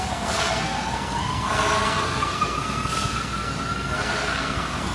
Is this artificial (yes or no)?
yes